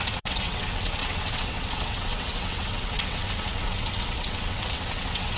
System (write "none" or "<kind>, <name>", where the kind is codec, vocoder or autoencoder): vocoder, WaveNeXt